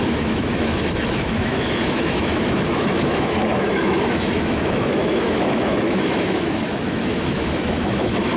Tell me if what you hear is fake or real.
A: fake